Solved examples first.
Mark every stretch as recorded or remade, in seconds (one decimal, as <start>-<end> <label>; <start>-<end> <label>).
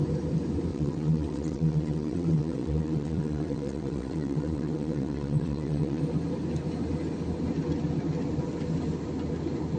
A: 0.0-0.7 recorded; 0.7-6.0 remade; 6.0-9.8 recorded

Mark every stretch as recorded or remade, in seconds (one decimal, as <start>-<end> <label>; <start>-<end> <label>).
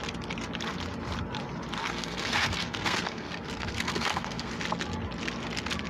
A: 0.0-1.8 recorded; 1.8-4.5 remade; 4.5-5.9 recorded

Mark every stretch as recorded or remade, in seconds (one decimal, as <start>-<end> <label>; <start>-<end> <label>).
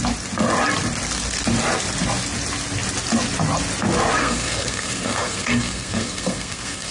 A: 0.0-4.2 recorded; 4.2-6.9 remade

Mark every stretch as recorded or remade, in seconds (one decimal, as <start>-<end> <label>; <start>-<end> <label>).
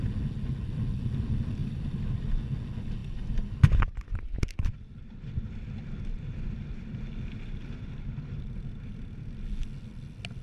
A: 0.0-1.6 recorded; 1.6-2.3 remade; 2.3-3.0 recorded; 3.0-7.0 remade; 7.0-10.4 recorded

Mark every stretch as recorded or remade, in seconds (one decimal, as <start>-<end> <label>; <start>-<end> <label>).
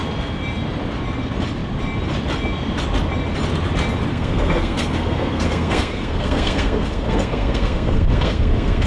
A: 0.0-4.1 recorded; 4.1-8.9 remade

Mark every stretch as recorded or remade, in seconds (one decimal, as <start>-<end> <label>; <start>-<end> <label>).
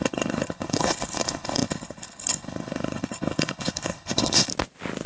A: 0.0-4.5 remade; 4.5-5.1 recorded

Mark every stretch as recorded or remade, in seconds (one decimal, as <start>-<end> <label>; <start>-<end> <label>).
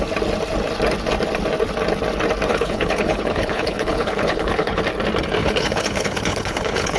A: 0.0-2.5 recorded; 2.5-4.8 remade; 4.8-5.4 recorded; 5.4-7.0 remade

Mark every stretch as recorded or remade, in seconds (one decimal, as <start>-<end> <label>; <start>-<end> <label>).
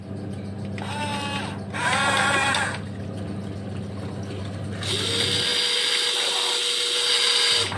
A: 0.0-7.8 recorded